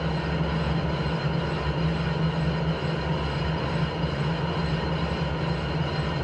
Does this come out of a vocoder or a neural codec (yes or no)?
no